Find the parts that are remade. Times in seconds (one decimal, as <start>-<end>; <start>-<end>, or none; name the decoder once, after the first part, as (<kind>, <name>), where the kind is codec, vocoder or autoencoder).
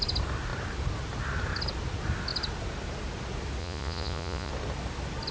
3.6-4.5 (vocoder, Vocos)